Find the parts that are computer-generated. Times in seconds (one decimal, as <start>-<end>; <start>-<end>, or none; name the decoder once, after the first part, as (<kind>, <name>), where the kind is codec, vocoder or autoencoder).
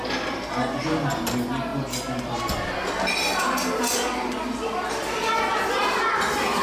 none